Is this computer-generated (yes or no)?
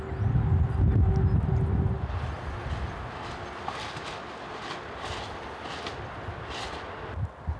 no